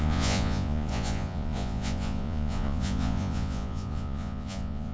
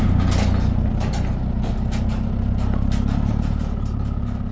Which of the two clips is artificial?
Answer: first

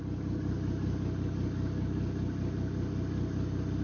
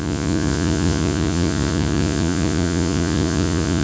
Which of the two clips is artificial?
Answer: second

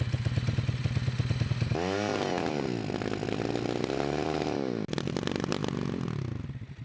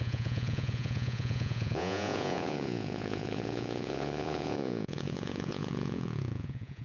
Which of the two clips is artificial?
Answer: second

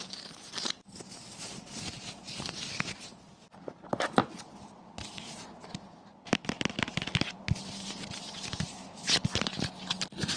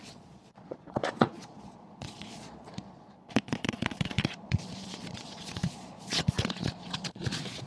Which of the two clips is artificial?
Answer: second